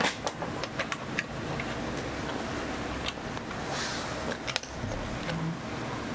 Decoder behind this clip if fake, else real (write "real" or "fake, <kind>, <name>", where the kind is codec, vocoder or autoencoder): real